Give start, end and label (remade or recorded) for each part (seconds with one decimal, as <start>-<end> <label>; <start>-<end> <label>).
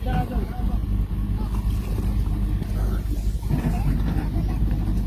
0.0-5.1 recorded